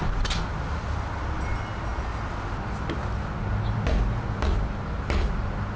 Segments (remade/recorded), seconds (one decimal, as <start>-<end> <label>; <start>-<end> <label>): 0.0-5.8 recorded